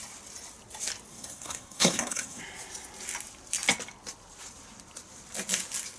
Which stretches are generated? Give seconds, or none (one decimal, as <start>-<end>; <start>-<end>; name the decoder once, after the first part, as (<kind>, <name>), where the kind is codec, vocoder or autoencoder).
1.1-2.4 (codec, SNAC)